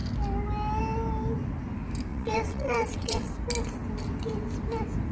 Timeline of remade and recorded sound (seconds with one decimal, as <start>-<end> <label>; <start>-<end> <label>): 0.0-2.1 recorded; 2.1-3.3 remade; 3.3-5.1 recorded